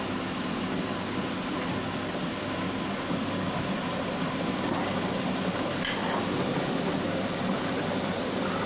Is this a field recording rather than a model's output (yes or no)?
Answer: yes